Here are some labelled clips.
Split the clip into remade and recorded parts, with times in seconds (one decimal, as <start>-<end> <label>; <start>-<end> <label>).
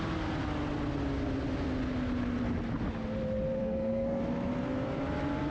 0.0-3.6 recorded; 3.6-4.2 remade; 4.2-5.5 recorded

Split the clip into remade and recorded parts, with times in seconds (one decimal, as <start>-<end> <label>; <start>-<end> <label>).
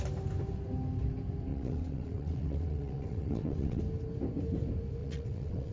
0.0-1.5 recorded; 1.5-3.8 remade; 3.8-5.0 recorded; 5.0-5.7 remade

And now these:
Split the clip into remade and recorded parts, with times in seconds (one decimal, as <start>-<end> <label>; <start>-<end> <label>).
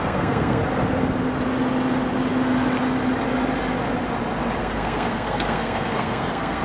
0.0-0.6 remade; 0.6-4.6 recorded; 4.6-6.6 remade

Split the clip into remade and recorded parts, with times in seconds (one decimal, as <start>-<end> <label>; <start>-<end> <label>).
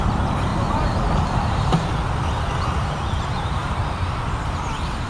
0.0-0.5 remade; 0.5-1.0 recorded; 1.0-2.0 remade; 2.0-2.8 recorded; 2.8-3.6 remade; 3.6-5.1 recorded